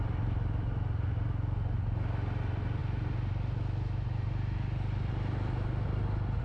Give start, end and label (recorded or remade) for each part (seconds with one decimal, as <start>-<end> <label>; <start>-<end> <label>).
0.0-6.4 recorded